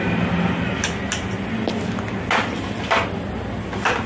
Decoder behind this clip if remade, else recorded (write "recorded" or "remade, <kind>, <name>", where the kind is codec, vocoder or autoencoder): recorded